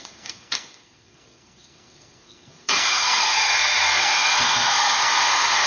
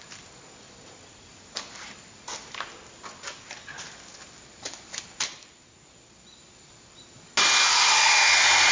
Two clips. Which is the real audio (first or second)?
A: second